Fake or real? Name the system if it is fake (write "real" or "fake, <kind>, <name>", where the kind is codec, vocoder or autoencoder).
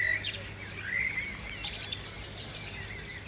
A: real